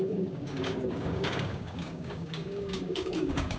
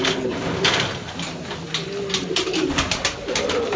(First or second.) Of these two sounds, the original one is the second